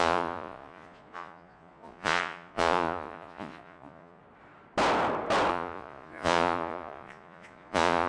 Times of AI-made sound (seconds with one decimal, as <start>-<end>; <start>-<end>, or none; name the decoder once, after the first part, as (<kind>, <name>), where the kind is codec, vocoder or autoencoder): 0.0-4.2 (vocoder, Vocos); 5.5-8.1

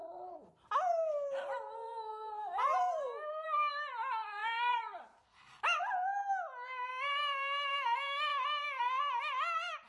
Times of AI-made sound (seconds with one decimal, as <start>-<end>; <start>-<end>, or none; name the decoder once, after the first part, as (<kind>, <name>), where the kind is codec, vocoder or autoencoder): 0.0-9.9 (vocoder, BigVGAN v2)

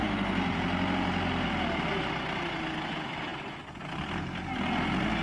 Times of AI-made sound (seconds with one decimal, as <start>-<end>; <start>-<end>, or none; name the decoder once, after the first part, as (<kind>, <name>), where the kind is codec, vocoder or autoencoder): none

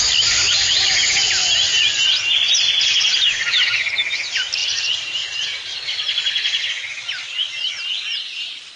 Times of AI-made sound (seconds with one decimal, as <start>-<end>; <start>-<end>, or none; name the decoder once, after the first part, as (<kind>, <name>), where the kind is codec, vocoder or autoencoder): none

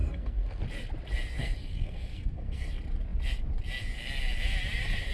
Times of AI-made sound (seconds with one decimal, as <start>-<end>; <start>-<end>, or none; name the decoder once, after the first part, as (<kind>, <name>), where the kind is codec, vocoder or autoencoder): 0.0-0.6 (codec, SNAC); 1.4-2.7

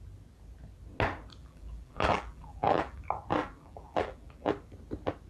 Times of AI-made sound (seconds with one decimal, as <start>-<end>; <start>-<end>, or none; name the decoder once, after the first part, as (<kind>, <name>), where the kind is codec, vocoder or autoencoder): 1.4-3.0 (vocoder, BigVGAN v2); 3.4-4.5